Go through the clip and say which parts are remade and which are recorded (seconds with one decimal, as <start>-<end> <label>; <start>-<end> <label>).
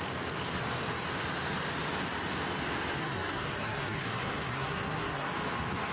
0.0-3.0 recorded; 3.0-5.3 remade; 5.3-5.9 recorded